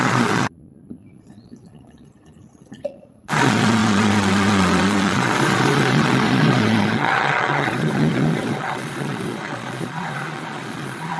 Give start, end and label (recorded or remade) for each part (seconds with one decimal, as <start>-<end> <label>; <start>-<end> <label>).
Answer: 0.0-11.2 remade